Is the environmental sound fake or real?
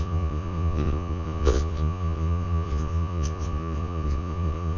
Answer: fake